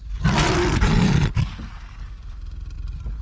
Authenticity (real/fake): real